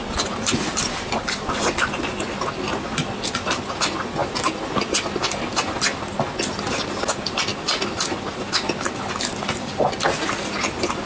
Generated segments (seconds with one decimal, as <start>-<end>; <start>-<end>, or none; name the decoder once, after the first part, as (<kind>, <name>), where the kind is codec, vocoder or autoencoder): none